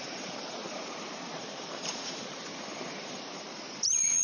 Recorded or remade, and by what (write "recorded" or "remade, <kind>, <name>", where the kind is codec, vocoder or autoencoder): remade, vocoder, BigVGAN v2